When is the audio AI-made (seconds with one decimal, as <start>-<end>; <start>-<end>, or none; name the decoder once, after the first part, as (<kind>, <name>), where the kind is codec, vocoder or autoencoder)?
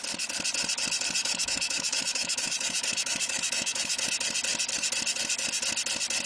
1.2-4.1 (autoencoder, DAC-VAE)